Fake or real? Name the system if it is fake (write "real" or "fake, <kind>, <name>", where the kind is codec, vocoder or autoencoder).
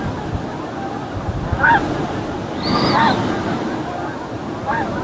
real